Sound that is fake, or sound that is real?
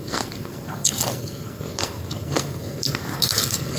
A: fake